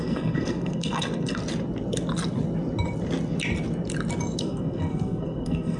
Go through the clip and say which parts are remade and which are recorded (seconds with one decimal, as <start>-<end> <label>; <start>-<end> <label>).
0.0-1.4 remade; 1.4-4.4 recorded; 4.4-5.8 remade